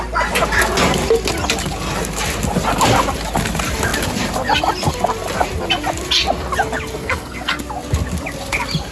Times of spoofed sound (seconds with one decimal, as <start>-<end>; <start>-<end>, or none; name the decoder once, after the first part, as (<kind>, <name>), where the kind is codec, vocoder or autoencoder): 6.9-7.6 (codec, SNAC)